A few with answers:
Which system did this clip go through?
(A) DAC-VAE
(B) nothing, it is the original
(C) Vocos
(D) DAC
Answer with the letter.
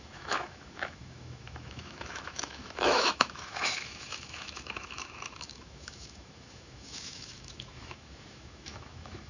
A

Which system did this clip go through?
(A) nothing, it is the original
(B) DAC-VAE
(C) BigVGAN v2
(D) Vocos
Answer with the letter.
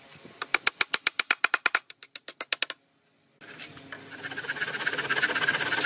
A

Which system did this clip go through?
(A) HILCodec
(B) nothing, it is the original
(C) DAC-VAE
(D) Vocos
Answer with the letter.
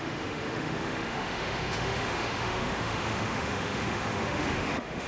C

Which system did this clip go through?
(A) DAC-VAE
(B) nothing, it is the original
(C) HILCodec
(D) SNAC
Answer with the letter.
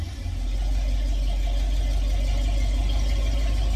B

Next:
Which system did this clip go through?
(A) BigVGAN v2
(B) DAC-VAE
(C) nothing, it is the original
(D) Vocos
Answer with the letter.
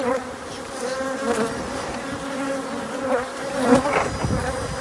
C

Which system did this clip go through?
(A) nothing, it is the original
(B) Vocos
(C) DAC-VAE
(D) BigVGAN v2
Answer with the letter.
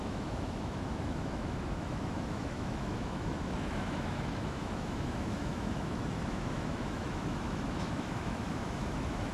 C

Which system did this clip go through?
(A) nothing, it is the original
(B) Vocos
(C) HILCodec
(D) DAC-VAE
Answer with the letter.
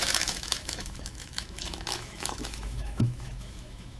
D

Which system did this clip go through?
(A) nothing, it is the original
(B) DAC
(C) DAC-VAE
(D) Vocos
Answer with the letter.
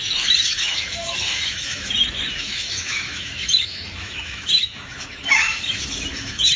C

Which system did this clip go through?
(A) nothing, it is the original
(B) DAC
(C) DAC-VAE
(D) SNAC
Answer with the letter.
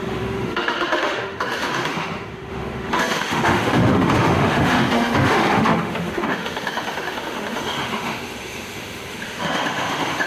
C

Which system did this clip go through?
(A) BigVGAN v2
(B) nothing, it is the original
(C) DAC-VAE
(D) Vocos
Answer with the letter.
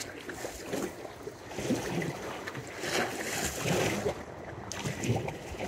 B